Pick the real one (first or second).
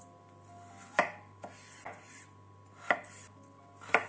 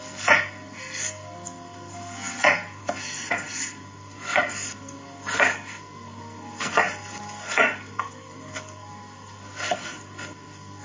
first